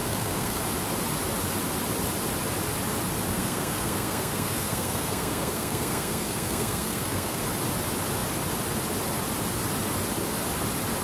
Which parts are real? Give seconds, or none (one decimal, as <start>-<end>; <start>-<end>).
0.6-3.3; 7.4-11.0